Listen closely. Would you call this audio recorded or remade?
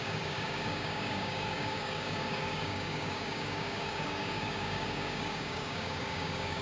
remade